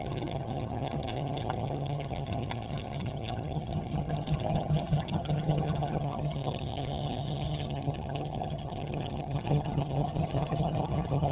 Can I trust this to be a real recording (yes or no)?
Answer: no